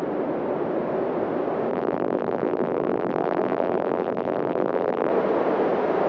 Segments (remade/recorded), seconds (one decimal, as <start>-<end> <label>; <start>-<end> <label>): 0.0-1.7 recorded; 1.7-5.1 remade; 5.1-6.1 recorded